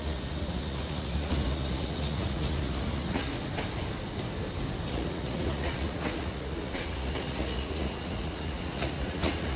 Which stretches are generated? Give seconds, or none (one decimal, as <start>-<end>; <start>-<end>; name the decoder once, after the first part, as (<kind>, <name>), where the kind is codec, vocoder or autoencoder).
0.0-3.3 (vocoder, Vocos); 4.9-9.6